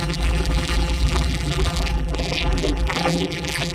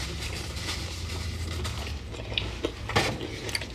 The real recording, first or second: second